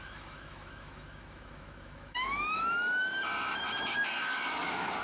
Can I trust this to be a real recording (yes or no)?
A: no